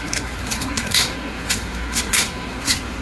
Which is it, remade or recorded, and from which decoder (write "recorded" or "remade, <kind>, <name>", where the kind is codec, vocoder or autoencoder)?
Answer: remade, codec, SNAC